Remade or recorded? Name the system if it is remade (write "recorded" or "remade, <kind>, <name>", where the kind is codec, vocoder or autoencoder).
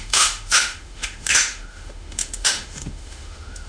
remade, autoencoder, DAC-VAE